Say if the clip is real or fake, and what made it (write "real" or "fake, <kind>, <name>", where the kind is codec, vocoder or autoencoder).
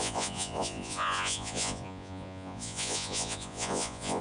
fake, vocoder, Vocos